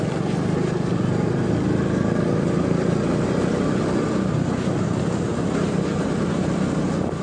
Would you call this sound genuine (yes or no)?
yes